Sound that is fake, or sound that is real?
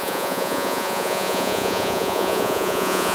fake